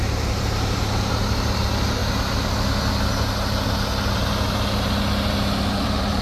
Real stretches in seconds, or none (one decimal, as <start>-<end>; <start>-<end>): 2.0-5.7